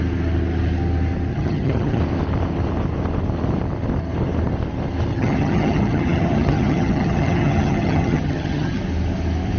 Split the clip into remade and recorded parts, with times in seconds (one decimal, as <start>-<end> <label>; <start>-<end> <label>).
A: 0.0-1.3 recorded; 1.3-2.0 remade; 2.0-5.1 recorded; 5.1-8.8 remade; 8.8-9.6 recorded